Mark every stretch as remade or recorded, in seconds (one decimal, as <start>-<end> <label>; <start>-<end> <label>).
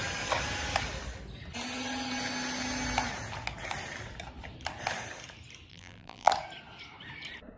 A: 0.0-5.7 recorded; 5.7-6.3 remade; 6.3-7.6 recorded